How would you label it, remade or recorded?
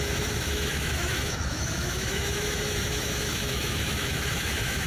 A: remade